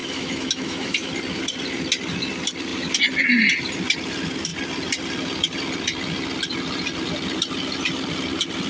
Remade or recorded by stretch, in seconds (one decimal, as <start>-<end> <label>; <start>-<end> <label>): 0.0-1.1 remade; 1.1-8.7 recorded